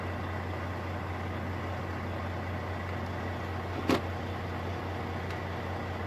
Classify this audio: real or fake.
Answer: real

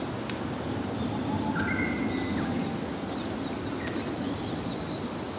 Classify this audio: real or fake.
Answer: real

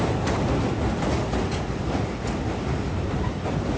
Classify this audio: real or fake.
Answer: real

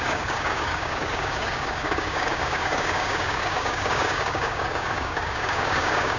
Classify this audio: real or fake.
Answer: fake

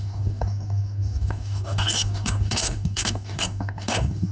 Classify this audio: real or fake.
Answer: fake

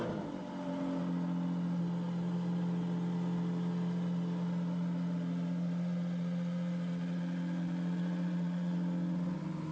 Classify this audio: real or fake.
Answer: real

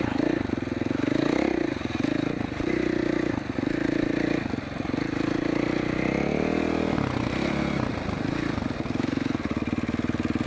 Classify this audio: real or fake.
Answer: real